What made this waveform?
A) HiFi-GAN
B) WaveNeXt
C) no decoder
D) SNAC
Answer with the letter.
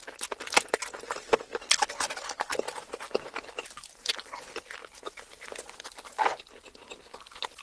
C